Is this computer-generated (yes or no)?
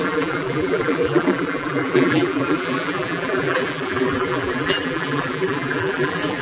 yes